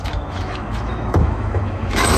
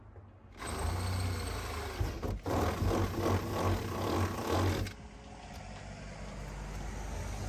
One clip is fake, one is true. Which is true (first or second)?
second